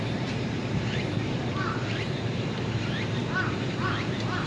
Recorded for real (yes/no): no